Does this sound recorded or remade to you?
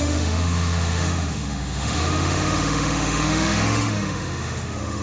remade